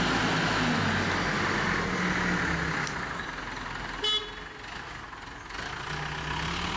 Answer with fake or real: real